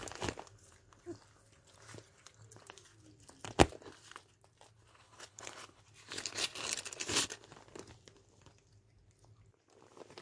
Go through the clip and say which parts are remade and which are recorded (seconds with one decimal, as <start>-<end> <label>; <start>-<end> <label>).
0.0-4.9 recorded; 4.9-5.8 remade; 5.8-10.2 recorded